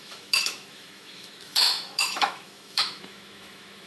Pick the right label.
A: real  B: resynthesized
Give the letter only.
B